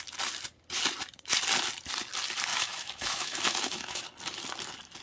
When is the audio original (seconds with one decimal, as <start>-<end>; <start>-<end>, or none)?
0.0-2.5; 4.0-5.0